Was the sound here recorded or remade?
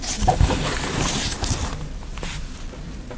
recorded